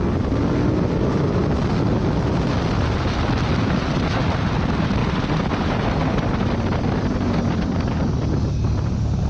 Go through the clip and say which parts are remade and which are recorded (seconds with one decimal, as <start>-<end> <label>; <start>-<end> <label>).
0.0-9.3 recorded